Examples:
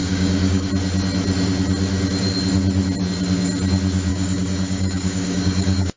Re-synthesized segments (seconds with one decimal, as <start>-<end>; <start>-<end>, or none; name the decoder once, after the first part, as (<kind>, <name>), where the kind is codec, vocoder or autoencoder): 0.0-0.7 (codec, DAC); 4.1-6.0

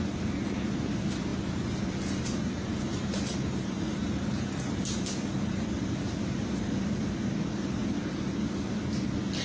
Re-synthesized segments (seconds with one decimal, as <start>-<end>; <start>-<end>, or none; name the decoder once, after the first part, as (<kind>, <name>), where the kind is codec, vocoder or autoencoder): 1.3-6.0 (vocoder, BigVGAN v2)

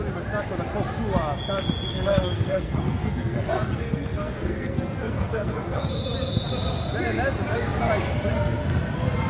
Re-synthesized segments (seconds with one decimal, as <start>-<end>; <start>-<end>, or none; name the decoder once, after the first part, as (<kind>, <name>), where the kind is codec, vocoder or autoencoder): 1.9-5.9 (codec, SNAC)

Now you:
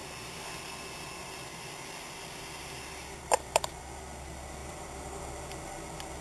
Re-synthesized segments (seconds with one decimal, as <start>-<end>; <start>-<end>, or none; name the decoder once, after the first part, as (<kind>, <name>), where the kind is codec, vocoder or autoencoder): 0.0-0.6 (vocoder, BigVGAN v2); 1.2-3.8; 4.6-5.2

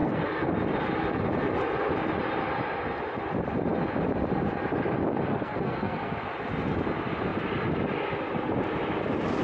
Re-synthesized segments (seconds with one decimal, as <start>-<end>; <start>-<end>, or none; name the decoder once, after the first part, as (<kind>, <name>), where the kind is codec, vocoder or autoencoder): 0.0-0.5 (codec, SNAC); 5.3-6.2

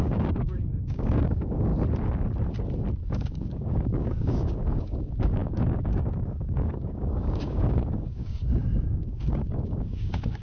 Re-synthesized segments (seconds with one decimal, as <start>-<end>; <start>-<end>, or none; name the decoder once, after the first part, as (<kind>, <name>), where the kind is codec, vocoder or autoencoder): 0.0-1.7 (codec, DAC); 3.1-10.4

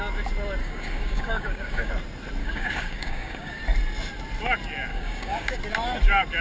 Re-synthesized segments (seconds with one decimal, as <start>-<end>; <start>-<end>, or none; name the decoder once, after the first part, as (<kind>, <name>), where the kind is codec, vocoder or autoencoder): 0.6-1.9 (codec, DAC); 2.4-3.6; 4.9-5.6

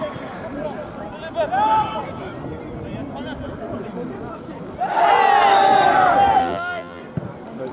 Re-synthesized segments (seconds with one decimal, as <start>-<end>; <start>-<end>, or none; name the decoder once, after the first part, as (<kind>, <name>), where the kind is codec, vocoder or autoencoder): 6.4-7.0 (vocoder, BigVGAN v2)